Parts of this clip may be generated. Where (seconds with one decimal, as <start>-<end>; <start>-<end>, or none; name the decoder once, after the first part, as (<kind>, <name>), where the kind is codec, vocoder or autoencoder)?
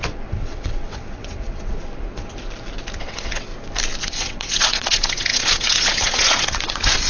0.0-1.9 (vocoder, WaveNeXt); 3.0-3.5; 4.0-7.1